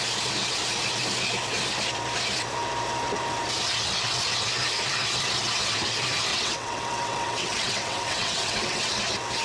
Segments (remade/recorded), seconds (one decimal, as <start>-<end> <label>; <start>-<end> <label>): 0.0-6.3 recorded; 6.3-8.9 remade; 8.9-9.4 recorded

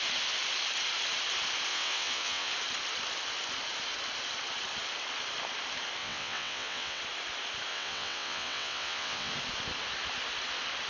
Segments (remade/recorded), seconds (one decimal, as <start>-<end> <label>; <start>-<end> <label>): 0.0-1.7 recorded; 1.7-2.5 remade; 2.5-6.0 recorded; 6.0-7.0 remade; 7.0-7.7 recorded; 7.7-9.3 remade; 9.3-10.9 recorded